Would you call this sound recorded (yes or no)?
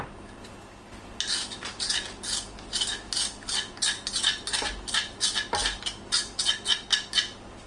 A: yes